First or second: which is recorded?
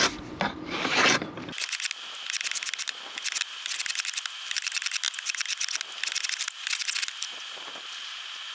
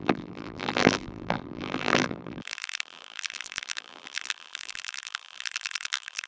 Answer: first